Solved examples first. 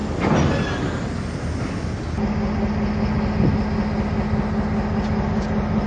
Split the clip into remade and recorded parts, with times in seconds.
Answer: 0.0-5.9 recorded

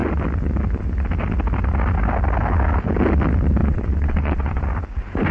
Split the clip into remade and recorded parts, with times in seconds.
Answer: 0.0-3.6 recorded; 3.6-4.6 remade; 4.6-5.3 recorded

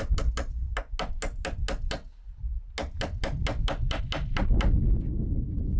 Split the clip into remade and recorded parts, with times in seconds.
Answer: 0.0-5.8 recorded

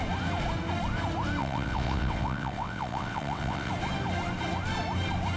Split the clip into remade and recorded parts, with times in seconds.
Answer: 0.0-1.4 recorded; 1.4-3.7 remade; 3.7-5.4 recorded

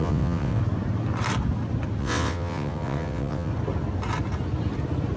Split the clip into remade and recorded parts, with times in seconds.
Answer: 0.0-0.6 remade; 0.6-2.0 recorded; 2.0-3.5 remade; 3.5-5.2 recorded

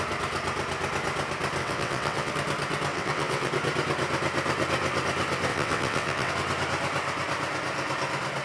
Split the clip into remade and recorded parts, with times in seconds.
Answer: 0.0-1.6 recorded; 1.6-2.3 remade; 2.3-2.9 recorded; 2.9-3.5 remade; 3.5-5.5 recorded; 5.5-6.3 remade; 6.3-8.4 recorded

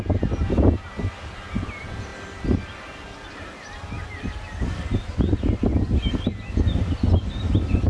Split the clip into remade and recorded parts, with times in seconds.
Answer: 0.0-7.9 recorded

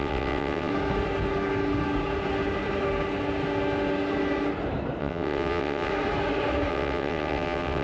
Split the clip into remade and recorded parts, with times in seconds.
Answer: 0.0-0.7 remade; 0.7-5.0 recorded; 5.0-5.9 remade; 5.9-6.7 recorded; 6.7-7.8 remade